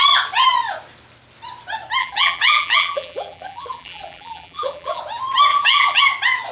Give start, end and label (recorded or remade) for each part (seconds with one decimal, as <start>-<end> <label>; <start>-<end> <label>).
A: 0.0-2.0 recorded; 2.0-5.0 remade; 5.0-5.5 recorded; 5.5-6.0 remade; 6.0-6.5 recorded